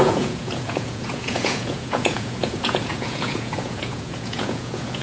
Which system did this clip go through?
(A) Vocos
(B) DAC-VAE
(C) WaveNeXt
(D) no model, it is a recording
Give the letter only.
A